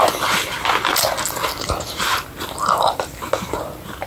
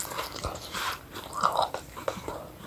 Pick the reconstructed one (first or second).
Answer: second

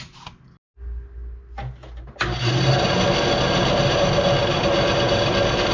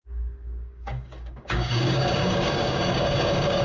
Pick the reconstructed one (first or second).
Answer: second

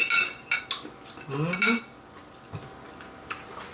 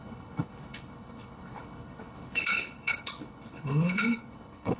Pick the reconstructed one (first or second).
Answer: second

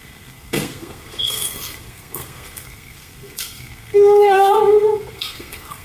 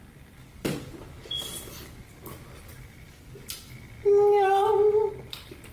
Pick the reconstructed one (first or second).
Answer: first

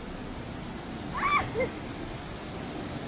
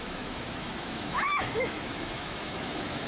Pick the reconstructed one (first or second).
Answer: second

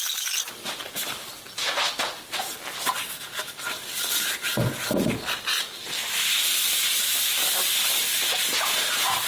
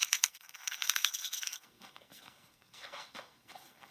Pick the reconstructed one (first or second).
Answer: second